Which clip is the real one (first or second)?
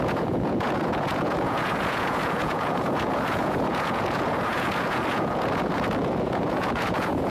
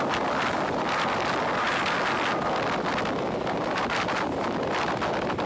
second